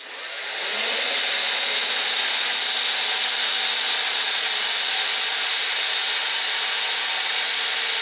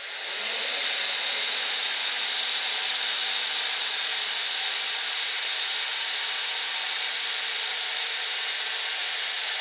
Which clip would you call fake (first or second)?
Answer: second